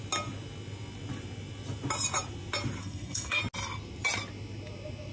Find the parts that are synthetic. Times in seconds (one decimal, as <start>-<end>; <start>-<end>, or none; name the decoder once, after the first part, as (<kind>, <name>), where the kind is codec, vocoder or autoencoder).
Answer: 2.8-3.4 (codec, SNAC)